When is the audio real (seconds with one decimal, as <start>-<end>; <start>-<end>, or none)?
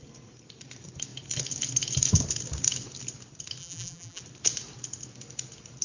0.0-3.6; 4.2-5.8